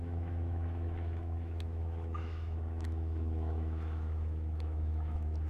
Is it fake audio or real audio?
fake